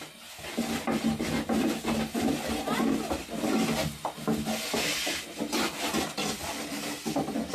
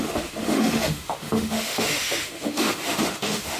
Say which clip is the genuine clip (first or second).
first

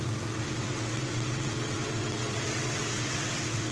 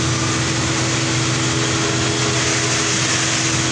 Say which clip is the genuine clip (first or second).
second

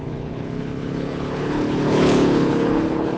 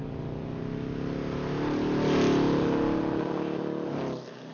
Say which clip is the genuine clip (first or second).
second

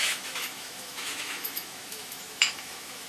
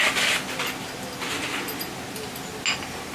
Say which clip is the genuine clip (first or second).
second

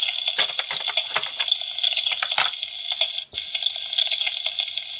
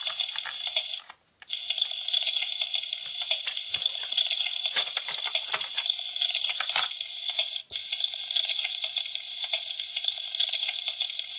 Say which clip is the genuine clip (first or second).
first